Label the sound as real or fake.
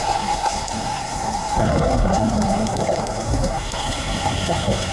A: fake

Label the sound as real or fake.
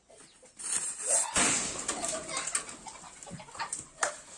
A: real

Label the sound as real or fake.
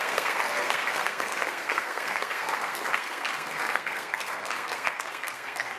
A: fake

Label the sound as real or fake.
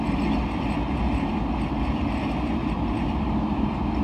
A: real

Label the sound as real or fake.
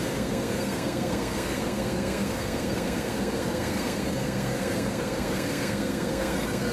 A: fake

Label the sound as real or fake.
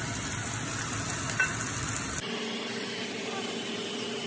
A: real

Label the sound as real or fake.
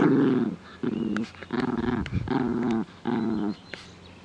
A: real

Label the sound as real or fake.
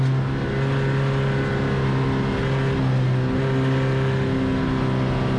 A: real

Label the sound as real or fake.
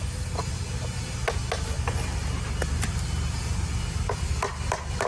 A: real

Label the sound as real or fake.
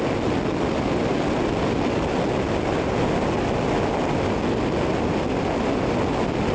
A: real